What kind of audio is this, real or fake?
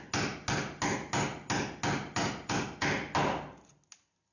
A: real